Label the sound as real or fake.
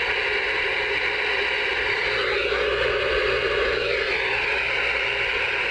real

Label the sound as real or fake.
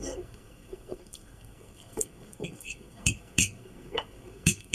fake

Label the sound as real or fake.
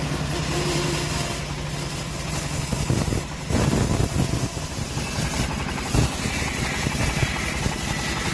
real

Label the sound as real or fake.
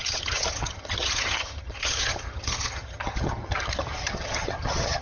fake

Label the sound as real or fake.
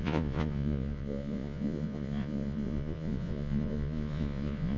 fake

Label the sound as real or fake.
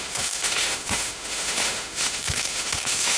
fake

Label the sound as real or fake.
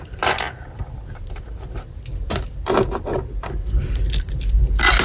real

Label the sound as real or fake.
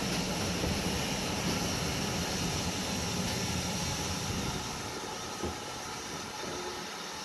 real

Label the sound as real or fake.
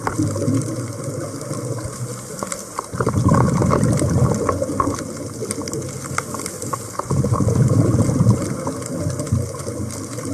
real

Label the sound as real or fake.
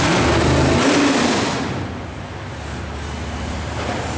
real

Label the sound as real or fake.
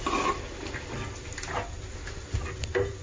real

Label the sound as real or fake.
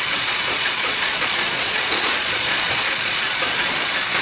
fake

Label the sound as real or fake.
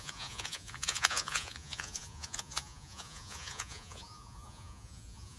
fake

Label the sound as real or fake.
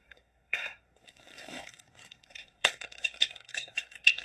fake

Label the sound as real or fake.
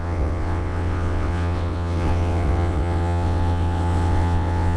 fake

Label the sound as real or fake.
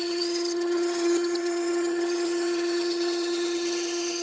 fake